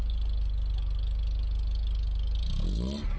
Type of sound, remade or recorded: recorded